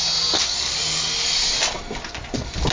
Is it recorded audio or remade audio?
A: recorded